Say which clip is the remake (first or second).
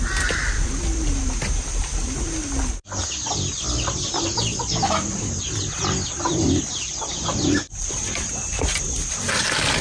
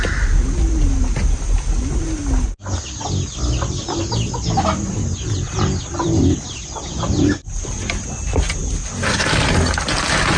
first